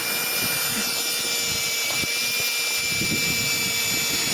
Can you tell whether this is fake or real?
real